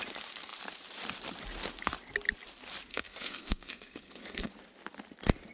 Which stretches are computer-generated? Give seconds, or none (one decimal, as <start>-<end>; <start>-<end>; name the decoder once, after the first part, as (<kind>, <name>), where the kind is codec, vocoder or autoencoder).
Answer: 2.9-4.5 (codec, SNAC)